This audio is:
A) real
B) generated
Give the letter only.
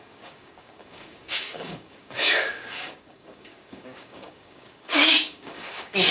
B